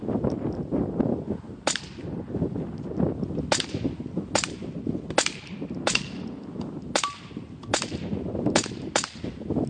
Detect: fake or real real